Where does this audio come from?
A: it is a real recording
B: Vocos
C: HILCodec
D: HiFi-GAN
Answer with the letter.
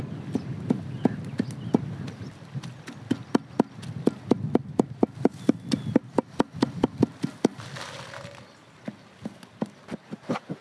A